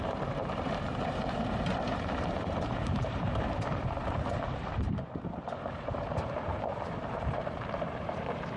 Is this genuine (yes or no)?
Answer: no